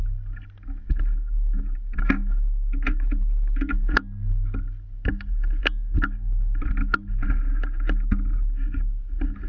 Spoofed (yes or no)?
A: no